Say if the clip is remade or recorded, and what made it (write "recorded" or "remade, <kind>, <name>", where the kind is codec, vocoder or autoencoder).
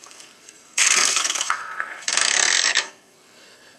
remade, codec, SNAC